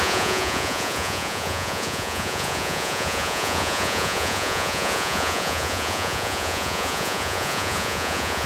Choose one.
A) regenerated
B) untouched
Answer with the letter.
A